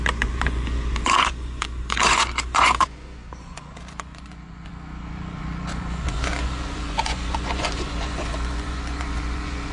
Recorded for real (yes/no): no